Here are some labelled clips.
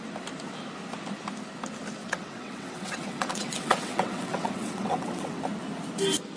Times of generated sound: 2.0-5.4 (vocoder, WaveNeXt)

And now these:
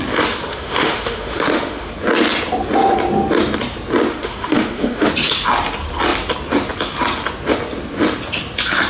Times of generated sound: 0.5-1.9 (autoencoder, DAC-VAE); 4.1-5.1

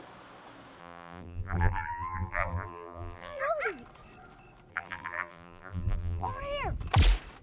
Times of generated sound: 0.8-3.4 (vocoder, BigVGAN v2); 4.7-6.4

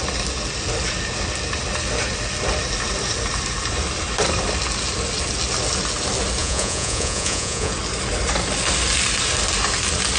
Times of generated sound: 6.4-7.7 (vocoder, Vocos)

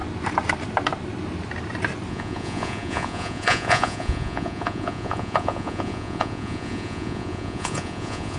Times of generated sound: 2.1-8.4 (vocoder, Vocos)